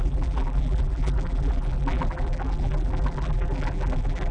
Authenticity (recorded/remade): remade